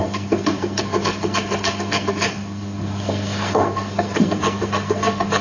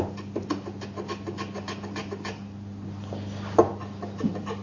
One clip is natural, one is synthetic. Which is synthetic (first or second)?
first